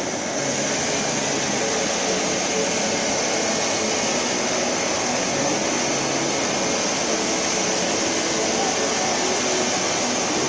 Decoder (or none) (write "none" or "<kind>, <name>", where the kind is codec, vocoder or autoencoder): none